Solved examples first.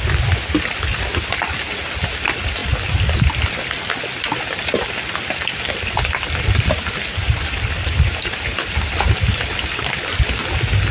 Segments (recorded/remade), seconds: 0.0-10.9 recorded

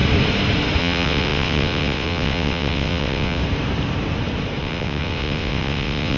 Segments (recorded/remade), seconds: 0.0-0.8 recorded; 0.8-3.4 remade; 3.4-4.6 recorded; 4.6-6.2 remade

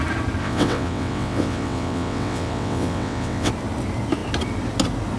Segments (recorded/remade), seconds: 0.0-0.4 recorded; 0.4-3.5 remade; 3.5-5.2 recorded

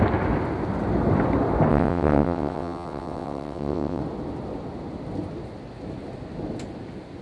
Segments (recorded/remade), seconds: 0.0-1.7 recorded; 1.7-4.0 remade; 4.0-7.2 recorded